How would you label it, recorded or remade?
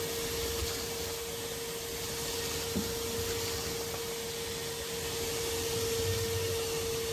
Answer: recorded